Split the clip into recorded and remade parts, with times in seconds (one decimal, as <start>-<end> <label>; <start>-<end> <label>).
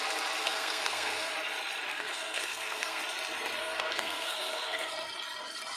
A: 0.0-0.4 recorded; 0.4-1.3 remade; 1.3-1.9 recorded; 1.9-3.0 remade; 3.0-3.6 recorded; 3.6-4.9 remade; 4.9-5.8 recorded